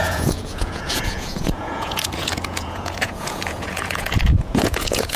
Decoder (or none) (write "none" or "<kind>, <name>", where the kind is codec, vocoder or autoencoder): vocoder, Vocos